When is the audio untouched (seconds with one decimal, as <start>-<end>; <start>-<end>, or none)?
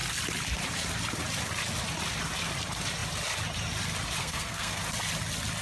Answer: 0.0-4.2; 4.8-5.6